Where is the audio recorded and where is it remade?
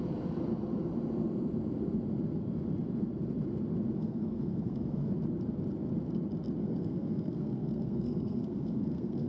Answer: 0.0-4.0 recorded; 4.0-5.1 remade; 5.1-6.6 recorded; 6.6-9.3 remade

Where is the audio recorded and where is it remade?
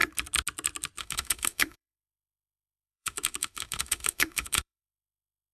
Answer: 0.0-1.0 recorded; 1.0-5.5 remade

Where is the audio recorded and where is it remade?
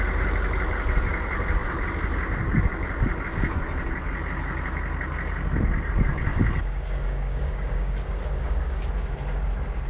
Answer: 0.0-6.3 recorded; 6.3-8.9 remade; 8.9-9.9 recorded